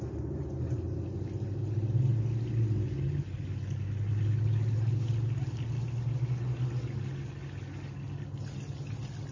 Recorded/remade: recorded